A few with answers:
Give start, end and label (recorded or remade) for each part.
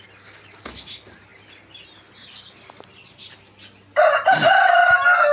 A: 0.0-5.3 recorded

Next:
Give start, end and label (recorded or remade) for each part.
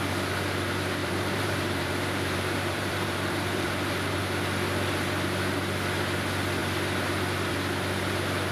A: 0.0-1.0 recorded; 1.0-4.2 remade; 4.2-8.5 recorded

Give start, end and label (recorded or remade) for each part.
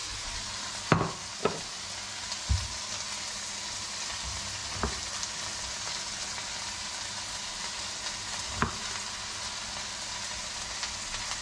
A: 0.0-0.9 remade; 0.9-11.4 recorded